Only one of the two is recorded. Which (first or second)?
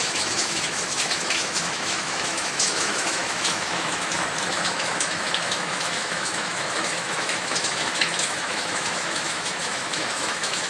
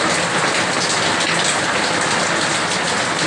second